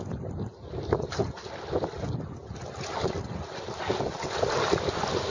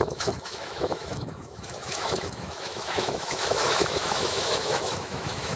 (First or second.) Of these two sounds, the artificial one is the second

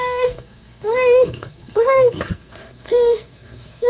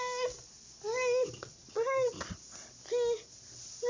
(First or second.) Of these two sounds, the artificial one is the first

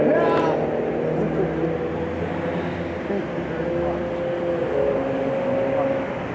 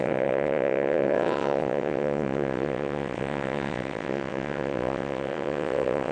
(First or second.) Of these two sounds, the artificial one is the second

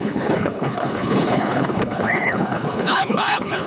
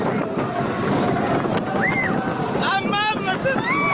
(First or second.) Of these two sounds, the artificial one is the first